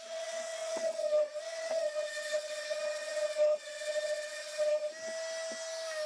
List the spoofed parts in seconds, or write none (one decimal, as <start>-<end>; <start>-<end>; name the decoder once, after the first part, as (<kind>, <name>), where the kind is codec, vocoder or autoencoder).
0.0-4.7 (vocoder, WaveNeXt)